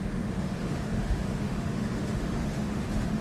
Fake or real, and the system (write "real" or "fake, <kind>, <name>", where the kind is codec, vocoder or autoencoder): fake, autoencoder, DAC-VAE